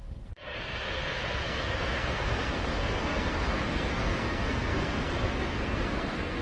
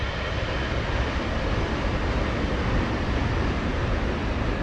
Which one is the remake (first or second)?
first